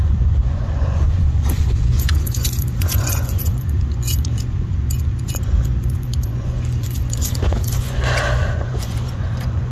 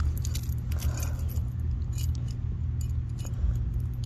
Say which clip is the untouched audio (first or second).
second